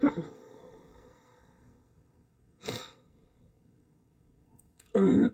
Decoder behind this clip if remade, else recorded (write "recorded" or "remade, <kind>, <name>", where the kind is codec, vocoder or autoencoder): remade, codec, SNAC